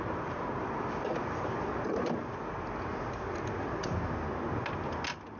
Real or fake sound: real